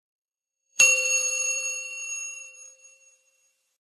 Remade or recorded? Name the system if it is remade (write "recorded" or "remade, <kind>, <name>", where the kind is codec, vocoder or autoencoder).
remade, vocoder, BigVGAN v2